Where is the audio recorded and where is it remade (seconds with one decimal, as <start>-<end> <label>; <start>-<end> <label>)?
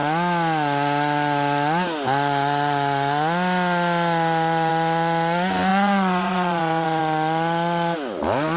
0.0-5.7 recorded; 5.7-7.0 remade; 7.0-8.6 recorded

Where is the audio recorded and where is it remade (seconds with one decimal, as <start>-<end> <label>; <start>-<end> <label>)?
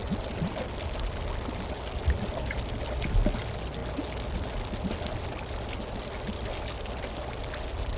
0.0-8.0 recorded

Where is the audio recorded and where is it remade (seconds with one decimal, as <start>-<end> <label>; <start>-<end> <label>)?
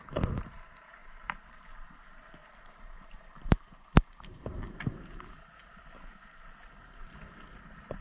0.0-1.0 recorded; 1.0-2.0 remade; 2.0-2.4 recorded; 2.4-4.7 remade; 4.7-8.0 recorded